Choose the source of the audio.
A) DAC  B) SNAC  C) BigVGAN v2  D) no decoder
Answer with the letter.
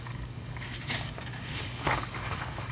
A